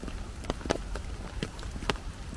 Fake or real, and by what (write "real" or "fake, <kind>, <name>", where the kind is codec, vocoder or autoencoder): fake, vocoder, BigVGAN v2